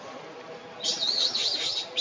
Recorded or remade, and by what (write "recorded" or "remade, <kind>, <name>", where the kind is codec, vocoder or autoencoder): recorded